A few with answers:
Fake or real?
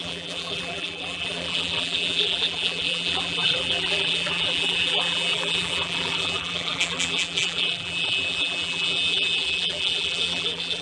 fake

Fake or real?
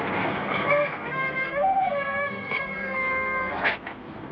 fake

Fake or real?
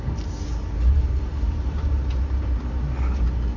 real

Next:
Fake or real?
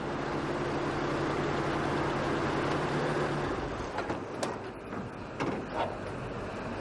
real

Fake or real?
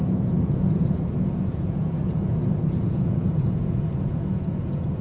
fake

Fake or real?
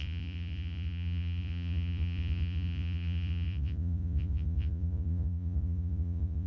fake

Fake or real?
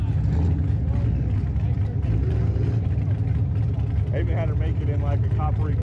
real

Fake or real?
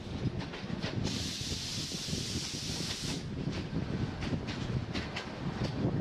real